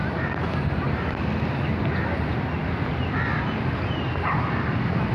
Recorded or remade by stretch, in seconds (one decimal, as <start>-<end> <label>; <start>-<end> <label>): 0.0-1.8 remade; 1.8-4.0 recorded; 4.0-5.1 remade